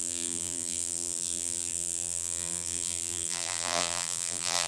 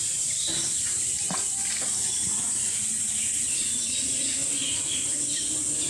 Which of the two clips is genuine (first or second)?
second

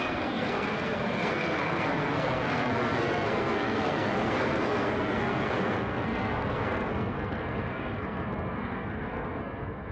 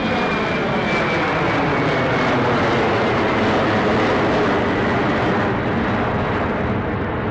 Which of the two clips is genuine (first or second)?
second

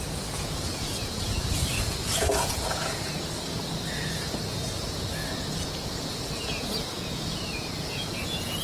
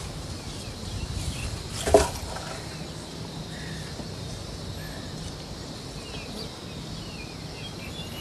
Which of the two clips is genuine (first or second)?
second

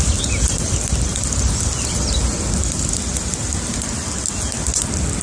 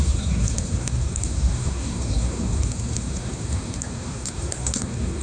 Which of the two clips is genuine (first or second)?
first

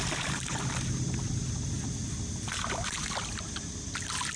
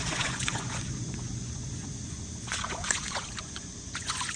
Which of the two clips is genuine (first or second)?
first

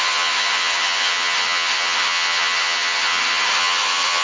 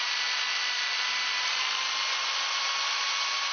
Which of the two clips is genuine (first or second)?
second